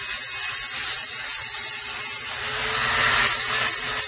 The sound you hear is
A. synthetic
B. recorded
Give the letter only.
B